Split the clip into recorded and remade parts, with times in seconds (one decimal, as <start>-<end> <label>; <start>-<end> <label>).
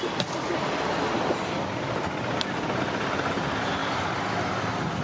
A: 0.0-2.8 remade; 2.8-3.8 recorded; 3.8-5.0 remade